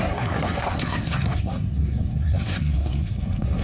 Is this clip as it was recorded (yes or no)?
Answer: no